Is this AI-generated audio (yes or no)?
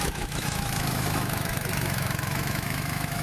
yes